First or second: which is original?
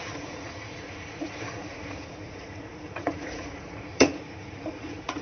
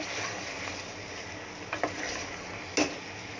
second